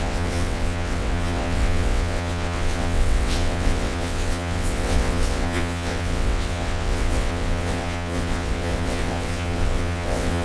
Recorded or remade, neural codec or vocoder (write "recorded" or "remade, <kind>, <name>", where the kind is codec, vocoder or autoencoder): remade, vocoder, WaveNeXt